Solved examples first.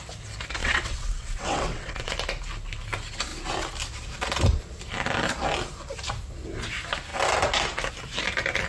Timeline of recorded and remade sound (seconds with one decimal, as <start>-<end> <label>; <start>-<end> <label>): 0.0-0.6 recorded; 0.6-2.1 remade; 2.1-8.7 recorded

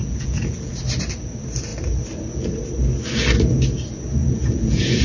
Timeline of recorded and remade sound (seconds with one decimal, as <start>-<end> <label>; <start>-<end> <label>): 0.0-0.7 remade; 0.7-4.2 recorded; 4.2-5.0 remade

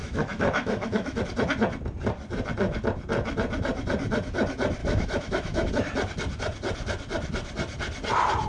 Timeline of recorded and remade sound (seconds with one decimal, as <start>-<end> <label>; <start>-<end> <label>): 0.0-1.2 remade; 1.2-4.8 recorded; 4.8-5.7 remade; 5.7-8.5 recorded

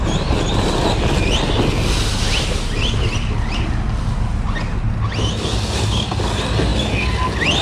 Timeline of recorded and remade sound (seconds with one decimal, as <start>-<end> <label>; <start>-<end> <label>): 0.0-7.6 recorded

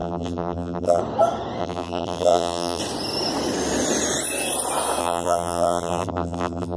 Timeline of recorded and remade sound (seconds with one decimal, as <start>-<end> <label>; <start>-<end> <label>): 0.0-1.0 remade; 1.0-1.6 recorded; 1.6-2.8 remade; 2.8-5.0 recorded; 5.0-6.8 remade

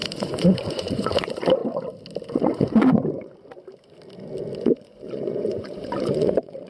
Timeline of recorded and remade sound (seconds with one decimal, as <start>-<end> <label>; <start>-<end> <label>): 0.0-1.6 remade; 1.6-2.3 recorded; 2.3-3.3 remade; 3.3-4.6 recorded; 4.6-6.7 remade